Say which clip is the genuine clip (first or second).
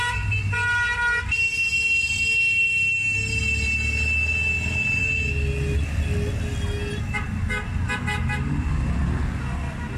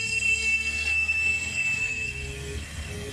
first